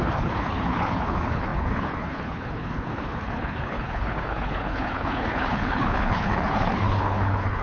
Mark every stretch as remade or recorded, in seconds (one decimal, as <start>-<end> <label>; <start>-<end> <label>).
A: 0.0-7.6 remade